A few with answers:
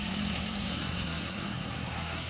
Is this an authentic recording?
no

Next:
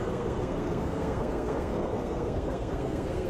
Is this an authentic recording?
no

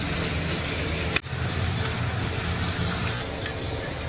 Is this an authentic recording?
yes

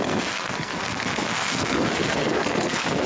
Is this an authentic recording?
no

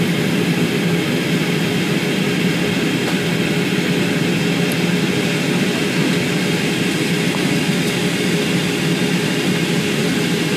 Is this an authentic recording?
yes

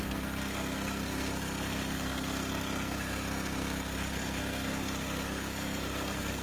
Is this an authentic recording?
no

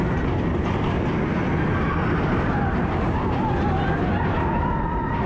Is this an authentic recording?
yes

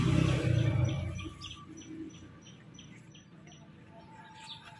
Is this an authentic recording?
yes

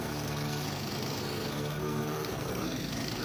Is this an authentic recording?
no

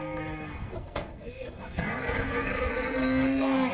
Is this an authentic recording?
no